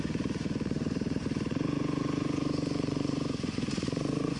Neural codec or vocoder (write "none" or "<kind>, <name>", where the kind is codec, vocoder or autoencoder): vocoder, Vocos